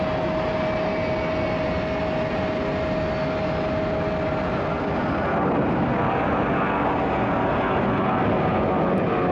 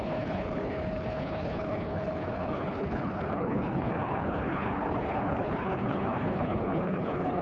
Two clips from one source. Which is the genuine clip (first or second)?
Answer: first